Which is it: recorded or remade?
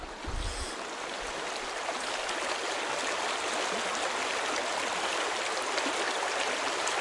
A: recorded